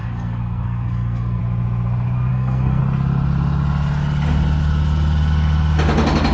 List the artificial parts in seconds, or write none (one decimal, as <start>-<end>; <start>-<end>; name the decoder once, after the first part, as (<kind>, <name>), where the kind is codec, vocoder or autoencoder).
0.0-1.4 (codec, SNAC); 2.3-2.8